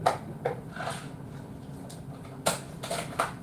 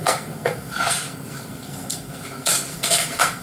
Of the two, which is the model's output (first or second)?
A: second